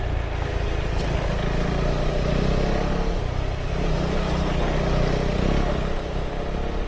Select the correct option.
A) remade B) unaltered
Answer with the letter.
B